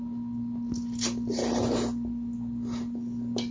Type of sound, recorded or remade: recorded